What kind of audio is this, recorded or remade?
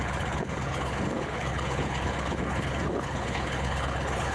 remade